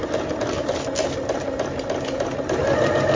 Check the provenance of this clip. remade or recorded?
recorded